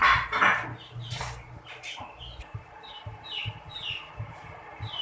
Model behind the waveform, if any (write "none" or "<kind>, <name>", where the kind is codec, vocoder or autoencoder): vocoder, BigVGAN v2